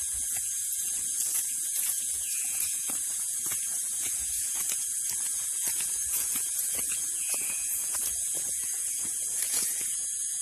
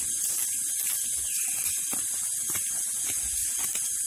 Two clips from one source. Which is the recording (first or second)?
second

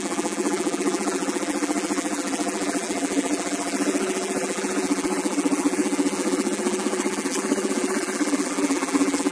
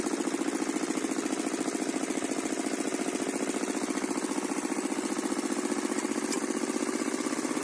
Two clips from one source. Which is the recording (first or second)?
second